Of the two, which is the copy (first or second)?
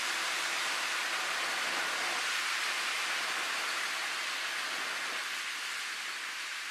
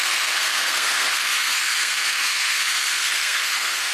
second